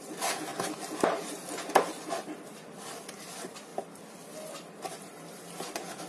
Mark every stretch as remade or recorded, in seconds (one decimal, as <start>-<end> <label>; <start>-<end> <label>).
0.0-6.1 recorded